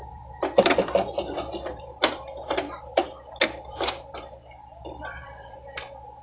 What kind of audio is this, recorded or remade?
remade